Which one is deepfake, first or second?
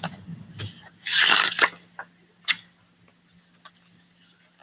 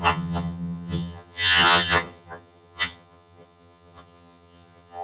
second